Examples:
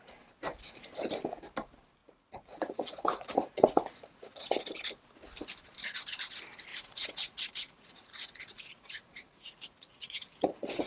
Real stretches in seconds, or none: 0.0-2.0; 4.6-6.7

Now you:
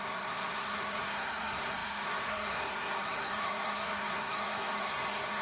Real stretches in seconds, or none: none

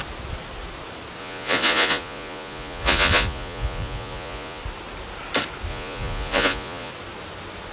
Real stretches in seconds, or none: 0.0-1.2; 4.6-5.7; 6.9-7.7